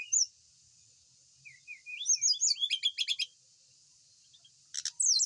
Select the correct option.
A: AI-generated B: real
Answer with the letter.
B